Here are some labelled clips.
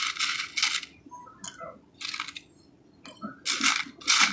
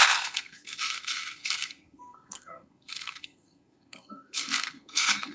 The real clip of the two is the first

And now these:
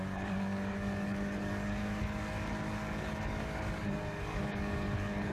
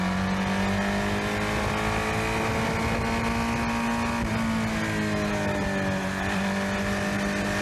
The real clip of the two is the second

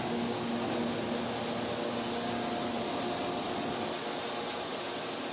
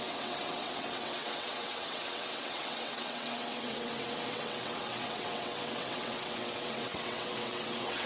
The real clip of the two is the first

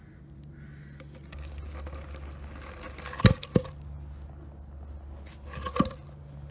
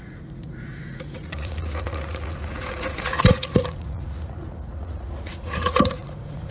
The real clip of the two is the first